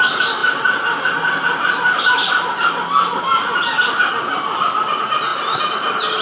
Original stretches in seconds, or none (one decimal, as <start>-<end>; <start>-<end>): 0.0-6.2